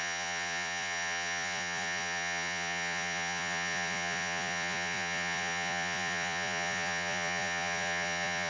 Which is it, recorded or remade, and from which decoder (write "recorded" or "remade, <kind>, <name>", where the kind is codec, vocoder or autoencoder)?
remade, vocoder, Vocos